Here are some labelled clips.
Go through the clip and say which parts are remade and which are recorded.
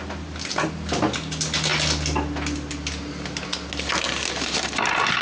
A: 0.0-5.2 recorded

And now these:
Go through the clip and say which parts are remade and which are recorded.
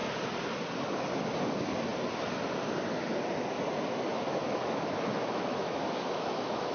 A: 0.0-4.1 recorded; 4.1-6.7 remade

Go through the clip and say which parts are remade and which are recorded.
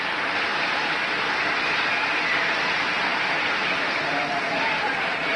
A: 0.0-5.4 recorded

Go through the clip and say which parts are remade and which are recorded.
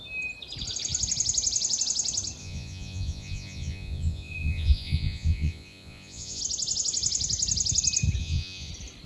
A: 0.0-2.4 recorded; 2.4-6.4 remade; 6.4-8.2 recorded; 8.2-8.7 remade; 8.7-9.1 recorded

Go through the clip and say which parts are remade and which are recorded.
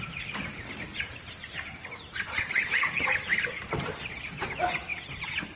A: 0.0-0.9 remade; 0.9-3.9 recorded; 3.9-4.9 remade; 4.9-5.6 recorded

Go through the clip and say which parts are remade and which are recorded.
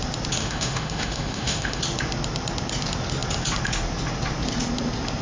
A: 0.0-0.4 recorded; 0.4-1.8 remade; 1.8-5.2 recorded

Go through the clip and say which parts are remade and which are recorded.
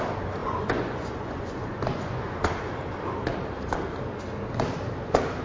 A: 0.0-0.4 recorded; 0.4-2.4 remade; 2.4-5.4 recorded